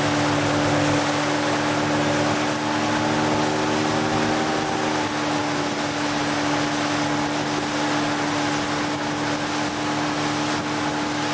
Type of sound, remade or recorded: recorded